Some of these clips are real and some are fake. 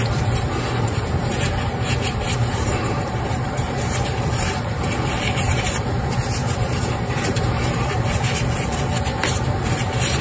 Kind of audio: fake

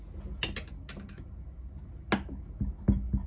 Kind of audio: real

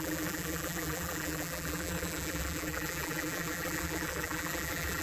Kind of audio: fake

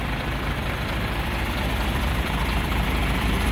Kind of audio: fake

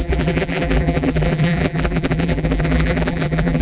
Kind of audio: fake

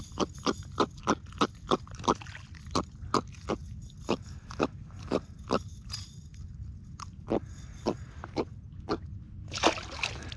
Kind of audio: real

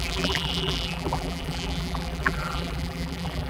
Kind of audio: fake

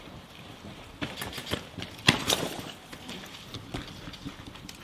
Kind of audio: fake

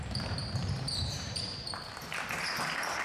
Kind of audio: fake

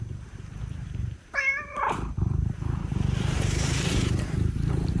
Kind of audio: fake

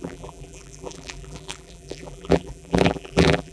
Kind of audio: fake